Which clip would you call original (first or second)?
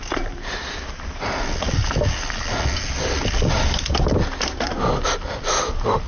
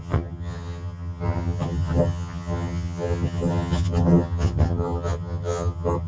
first